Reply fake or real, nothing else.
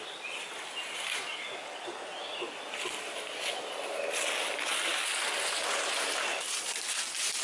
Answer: real